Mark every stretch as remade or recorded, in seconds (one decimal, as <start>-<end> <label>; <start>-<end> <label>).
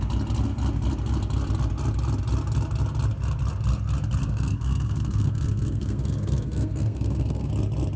0.0-4.2 recorded; 4.2-7.5 remade; 7.5-8.0 recorded